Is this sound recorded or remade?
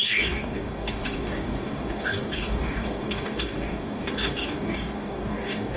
remade